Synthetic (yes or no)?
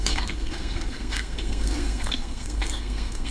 yes